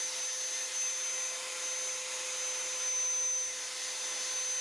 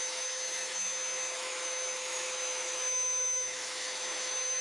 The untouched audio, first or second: first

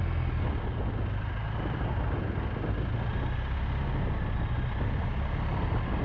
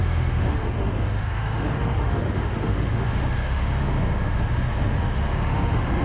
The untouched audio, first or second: first